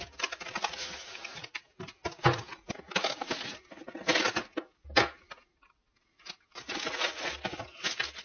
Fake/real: real